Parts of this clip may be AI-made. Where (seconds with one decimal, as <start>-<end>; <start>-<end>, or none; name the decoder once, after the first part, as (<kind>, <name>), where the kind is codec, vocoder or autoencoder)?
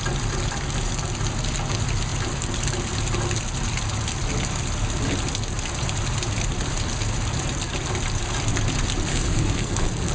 9.1-10.1 (codec, SNAC)